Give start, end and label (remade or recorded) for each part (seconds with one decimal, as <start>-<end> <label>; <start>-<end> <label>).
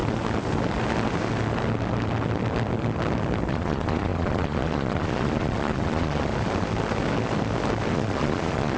0.0-3.5 recorded; 3.5-6.3 remade; 6.3-7.9 recorded; 7.9-8.8 remade